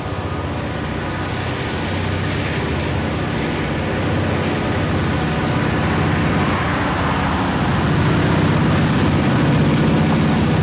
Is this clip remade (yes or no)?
no